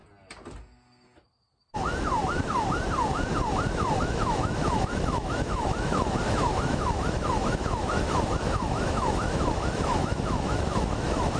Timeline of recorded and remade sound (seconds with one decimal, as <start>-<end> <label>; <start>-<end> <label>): 0.0-4.0 recorded; 4.0-11.4 remade